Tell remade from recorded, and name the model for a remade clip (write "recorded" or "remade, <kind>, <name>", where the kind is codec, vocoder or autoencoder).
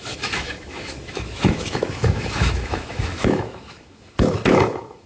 remade, autoencoder, DAC-VAE